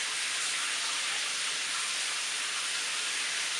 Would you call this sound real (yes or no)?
yes